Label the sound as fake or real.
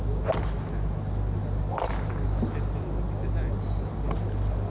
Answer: real